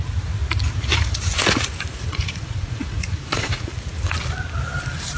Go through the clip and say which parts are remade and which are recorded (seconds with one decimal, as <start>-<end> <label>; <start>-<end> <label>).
0.0-2.1 recorded; 2.1-3.7 remade; 3.7-5.2 recorded